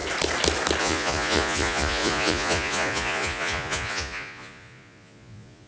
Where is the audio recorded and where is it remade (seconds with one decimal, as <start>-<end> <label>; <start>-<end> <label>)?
0.0-0.8 recorded; 0.8-5.7 remade